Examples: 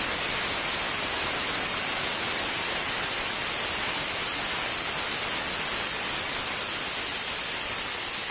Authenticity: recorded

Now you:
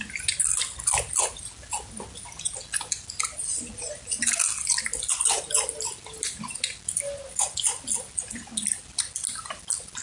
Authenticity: recorded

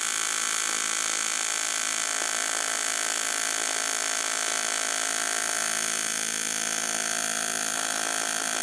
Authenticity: recorded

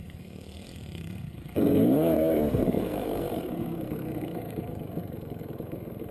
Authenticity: remade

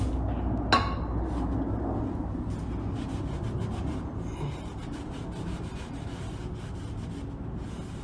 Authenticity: recorded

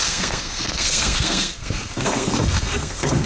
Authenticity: remade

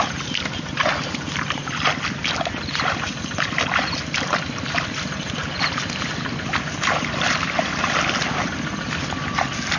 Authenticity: recorded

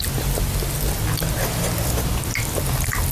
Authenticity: recorded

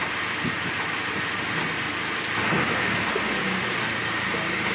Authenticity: recorded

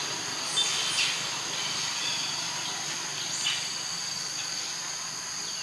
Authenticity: recorded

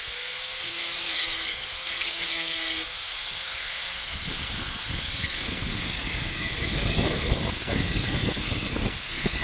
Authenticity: remade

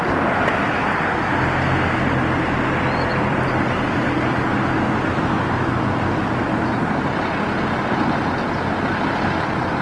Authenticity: recorded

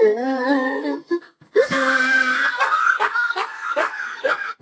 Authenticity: remade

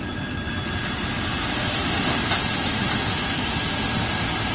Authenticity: recorded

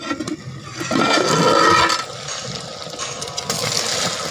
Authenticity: recorded